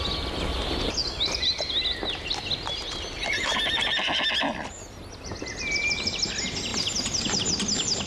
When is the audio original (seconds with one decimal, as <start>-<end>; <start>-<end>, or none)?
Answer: 0.0-8.1